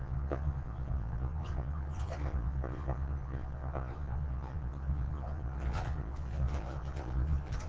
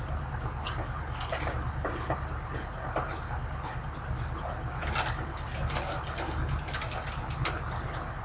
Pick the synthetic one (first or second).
first